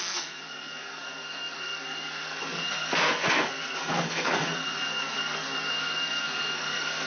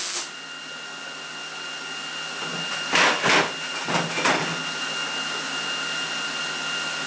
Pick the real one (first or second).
second